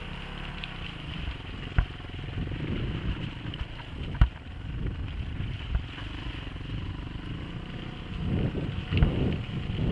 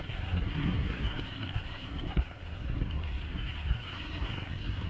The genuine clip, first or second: first